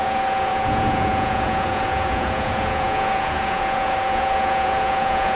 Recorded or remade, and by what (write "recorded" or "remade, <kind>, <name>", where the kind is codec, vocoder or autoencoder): remade, vocoder, Vocos